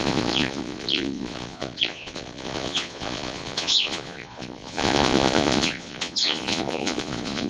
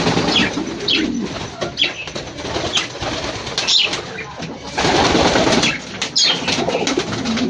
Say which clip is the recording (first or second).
second